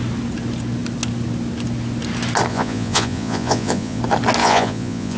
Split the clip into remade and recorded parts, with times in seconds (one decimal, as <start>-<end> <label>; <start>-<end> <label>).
0.0-2.5 recorded; 2.5-4.0 remade; 4.0-4.4 recorded; 4.4-5.2 remade